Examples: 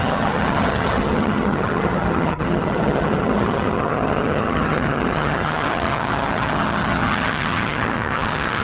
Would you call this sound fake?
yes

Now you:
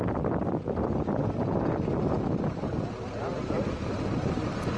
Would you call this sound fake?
no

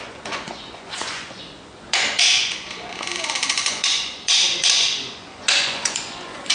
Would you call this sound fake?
yes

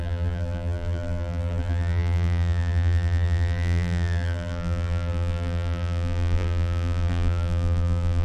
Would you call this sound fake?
yes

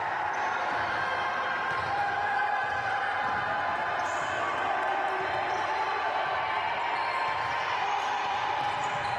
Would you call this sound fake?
no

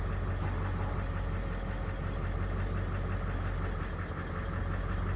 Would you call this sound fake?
no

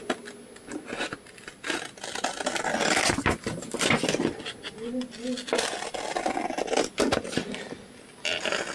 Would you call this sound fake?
no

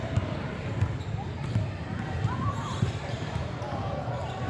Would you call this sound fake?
yes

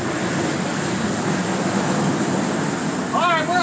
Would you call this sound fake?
no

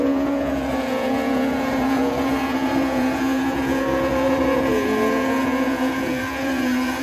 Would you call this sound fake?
yes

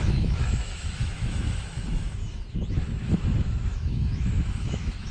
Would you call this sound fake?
yes